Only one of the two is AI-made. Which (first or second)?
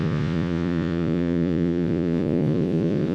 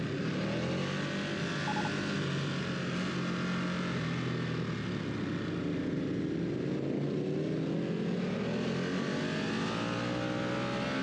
first